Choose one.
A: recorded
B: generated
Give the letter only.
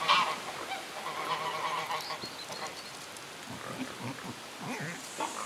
A